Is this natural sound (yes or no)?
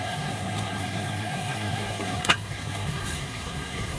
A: no